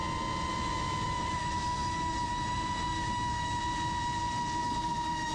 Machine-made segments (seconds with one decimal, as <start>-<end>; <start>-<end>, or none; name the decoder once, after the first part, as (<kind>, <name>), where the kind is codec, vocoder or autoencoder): 0.5-3.6 (autoencoder, DAC-VAE); 4.6-5.3